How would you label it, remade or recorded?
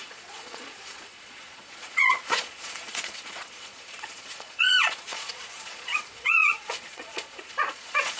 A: remade